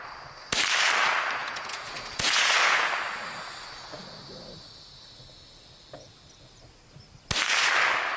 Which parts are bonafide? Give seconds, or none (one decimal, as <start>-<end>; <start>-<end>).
0.0-1.4; 2.9-8.2